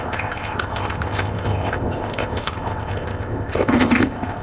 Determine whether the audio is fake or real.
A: fake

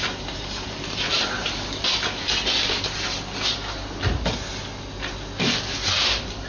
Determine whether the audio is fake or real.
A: real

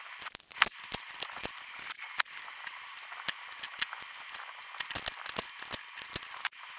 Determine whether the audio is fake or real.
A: real